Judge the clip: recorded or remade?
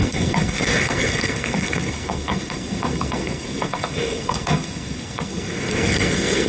remade